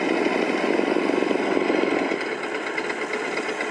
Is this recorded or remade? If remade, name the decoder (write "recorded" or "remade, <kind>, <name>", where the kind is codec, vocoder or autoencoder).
recorded